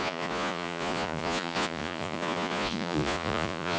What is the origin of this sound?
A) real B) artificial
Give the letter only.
B